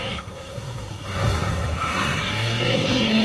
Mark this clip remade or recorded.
remade